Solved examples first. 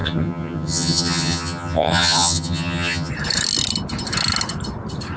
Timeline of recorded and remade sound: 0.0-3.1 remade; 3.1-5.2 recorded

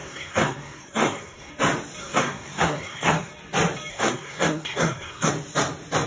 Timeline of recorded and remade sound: 0.0-1.5 remade; 1.5-2.0 recorded; 2.0-3.3 remade; 3.3-3.9 recorded; 3.9-5.3 remade; 5.3-6.1 recorded